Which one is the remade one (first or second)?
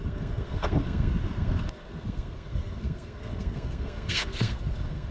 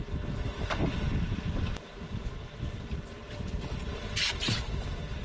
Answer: first